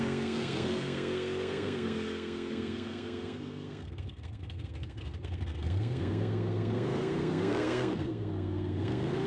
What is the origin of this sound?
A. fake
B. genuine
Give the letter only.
A